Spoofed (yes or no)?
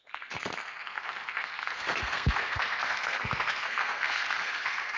yes